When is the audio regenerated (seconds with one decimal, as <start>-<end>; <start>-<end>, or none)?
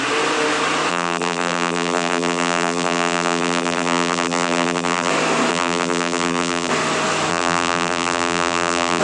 0.9-5.1; 5.5-6.7; 7.3-9.0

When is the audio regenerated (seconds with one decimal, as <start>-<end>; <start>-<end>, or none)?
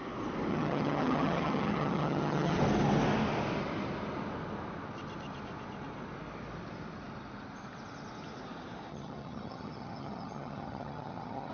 0.5-2.6; 8.9-11.5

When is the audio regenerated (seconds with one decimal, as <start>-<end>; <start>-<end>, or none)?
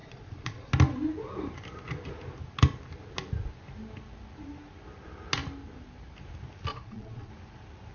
0.0-0.7; 6.7-7.3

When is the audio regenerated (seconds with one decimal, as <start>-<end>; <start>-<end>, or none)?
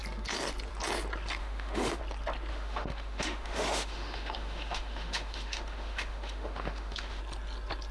1.4-2.0; 2.5-7.2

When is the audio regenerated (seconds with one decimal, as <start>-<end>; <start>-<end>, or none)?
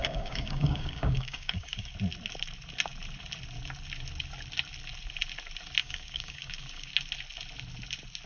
0.0-1.9; 5.8-6.9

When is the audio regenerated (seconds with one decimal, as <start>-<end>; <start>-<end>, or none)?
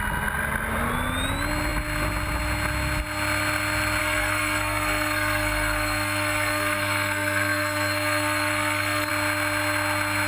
4.0-9.1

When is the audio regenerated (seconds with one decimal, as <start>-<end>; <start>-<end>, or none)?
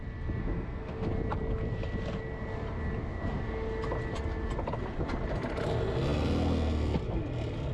0.4-1.1